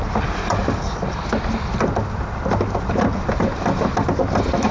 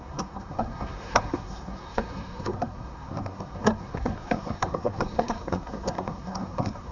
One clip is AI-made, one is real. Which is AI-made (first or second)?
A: second